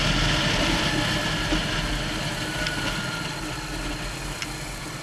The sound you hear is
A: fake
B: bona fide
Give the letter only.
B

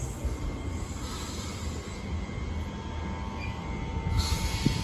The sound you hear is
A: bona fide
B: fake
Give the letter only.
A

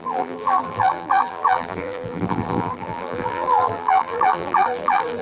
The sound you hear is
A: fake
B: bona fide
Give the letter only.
A